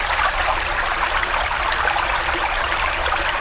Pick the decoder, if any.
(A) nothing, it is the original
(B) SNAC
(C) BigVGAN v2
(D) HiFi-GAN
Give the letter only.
A